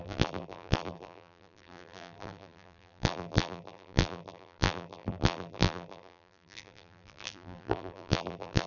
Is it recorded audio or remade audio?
remade